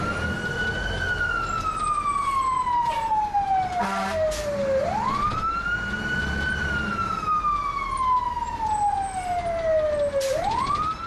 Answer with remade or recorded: recorded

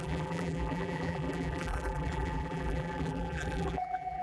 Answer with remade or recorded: remade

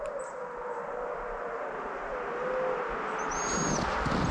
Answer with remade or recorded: recorded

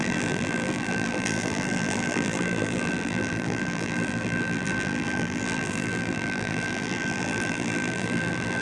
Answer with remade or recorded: remade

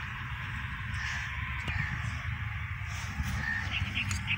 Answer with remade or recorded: recorded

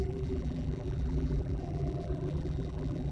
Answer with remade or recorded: remade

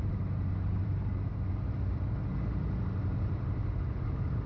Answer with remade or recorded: remade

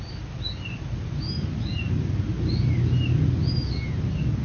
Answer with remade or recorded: recorded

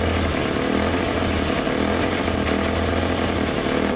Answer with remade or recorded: recorded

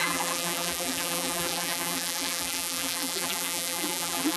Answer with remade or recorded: remade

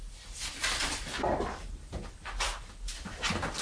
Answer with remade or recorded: remade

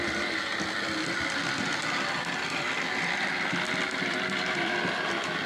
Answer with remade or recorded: recorded